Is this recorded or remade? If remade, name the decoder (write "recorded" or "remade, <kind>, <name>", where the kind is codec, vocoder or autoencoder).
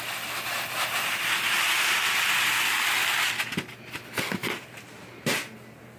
recorded